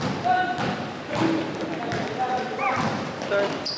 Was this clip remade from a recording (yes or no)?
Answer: no